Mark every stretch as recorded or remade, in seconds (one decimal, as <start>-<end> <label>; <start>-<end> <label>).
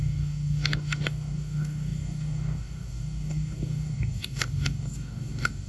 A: 0.0-5.7 remade